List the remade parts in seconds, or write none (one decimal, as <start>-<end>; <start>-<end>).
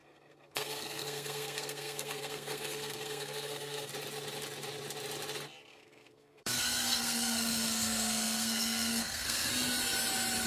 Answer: 0.0-3.9; 5.7-9.5